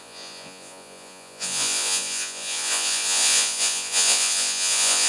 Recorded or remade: remade